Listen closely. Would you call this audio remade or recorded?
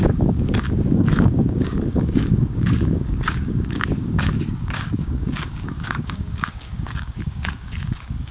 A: remade